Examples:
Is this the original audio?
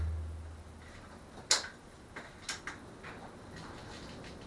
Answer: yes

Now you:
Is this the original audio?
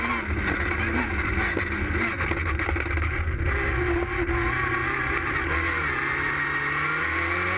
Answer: yes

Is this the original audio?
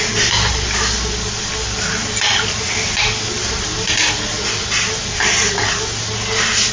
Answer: yes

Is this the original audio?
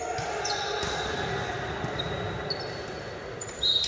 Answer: yes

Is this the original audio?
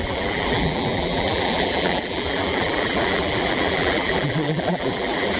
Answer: no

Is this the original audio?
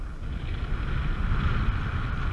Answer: yes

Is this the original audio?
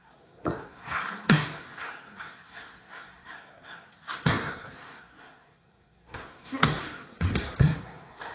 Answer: no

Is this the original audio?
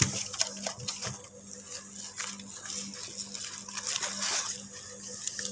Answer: yes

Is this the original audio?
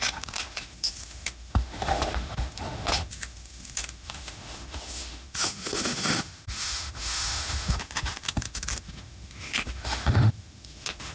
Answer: no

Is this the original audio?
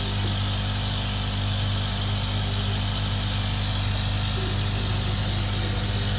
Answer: yes